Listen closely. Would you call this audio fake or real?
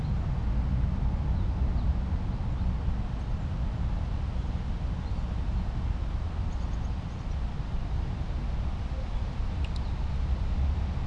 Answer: real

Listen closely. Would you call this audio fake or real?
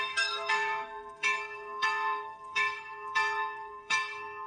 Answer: fake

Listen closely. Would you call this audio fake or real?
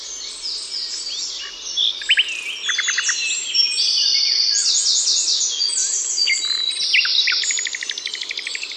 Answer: real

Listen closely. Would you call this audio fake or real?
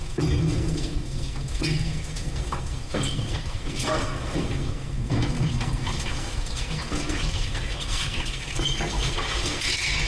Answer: fake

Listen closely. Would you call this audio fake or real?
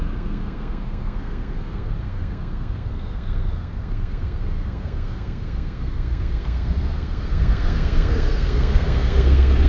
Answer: fake